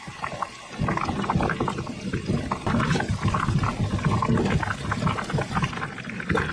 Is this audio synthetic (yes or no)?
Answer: yes